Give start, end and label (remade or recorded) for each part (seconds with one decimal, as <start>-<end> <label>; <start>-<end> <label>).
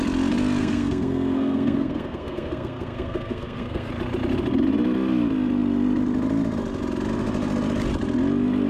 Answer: 0.0-0.6 recorded; 0.6-3.9 remade; 3.9-8.7 recorded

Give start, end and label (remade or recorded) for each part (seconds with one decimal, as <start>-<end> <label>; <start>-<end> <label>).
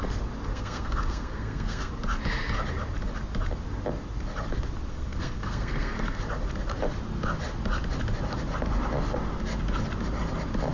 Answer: 0.0-0.5 recorded; 0.5-1.9 remade; 1.9-4.9 recorded; 4.9-6.2 remade; 6.2-10.7 recorded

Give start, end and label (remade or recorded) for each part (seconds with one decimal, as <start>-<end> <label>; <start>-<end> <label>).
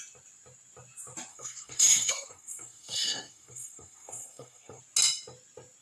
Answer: 0.0-1.3 recorded; 1.3-4.8 remade; 4.8-5.8 recorded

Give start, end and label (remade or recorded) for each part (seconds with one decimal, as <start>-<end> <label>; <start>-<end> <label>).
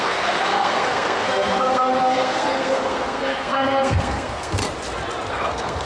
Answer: 0.0-4.6 remade; 4.6-5.3 recorded; 5.3-5.9 remade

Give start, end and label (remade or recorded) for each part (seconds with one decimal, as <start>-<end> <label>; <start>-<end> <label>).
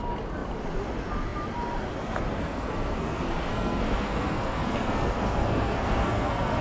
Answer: 0.0-2.4 recorded; 2.4-6.6 remade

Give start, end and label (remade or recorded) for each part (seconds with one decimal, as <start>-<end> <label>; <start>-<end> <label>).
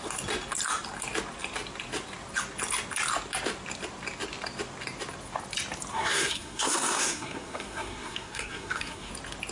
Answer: 0.0-5.9 recorded; 5.9-9.1 remade; 9.1-9.5 recorded